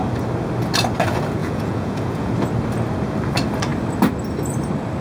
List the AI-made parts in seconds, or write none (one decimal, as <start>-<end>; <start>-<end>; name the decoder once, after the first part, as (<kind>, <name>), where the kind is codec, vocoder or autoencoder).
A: 1.4-2.3 (vocoder, Vocos)